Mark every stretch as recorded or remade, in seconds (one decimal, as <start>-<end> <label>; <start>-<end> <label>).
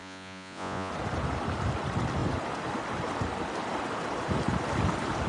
0.0-0.9 remade; 0.9-5.3 recorded